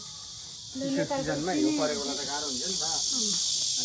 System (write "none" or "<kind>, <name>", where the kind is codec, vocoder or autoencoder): none